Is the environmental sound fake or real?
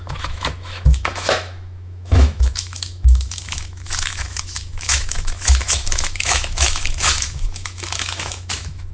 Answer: fake